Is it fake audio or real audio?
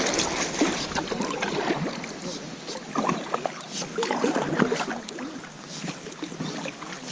real